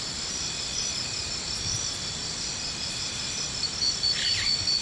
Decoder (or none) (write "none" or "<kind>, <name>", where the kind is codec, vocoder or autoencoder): none